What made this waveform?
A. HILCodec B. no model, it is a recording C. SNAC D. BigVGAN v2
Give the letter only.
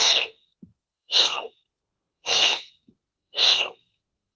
C